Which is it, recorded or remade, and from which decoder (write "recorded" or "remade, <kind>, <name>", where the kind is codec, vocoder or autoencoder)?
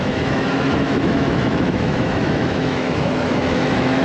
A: remade, autoencoder, DAC-VAE